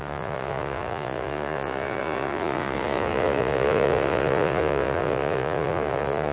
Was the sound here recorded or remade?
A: remade